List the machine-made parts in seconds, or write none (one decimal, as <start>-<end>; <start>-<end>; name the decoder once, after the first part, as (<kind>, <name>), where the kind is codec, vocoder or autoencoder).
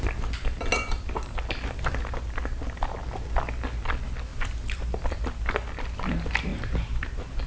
none